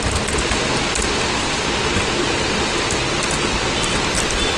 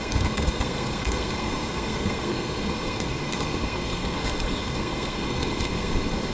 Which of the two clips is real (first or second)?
first